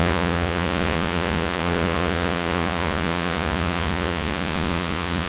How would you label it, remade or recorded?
remade